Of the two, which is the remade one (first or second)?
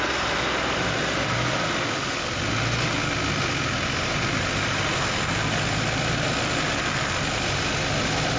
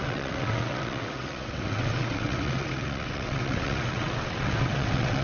second